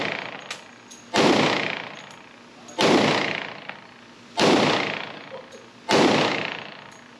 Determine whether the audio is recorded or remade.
recorded